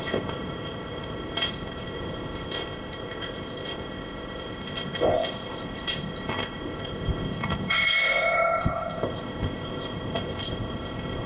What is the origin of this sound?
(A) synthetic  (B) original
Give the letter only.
A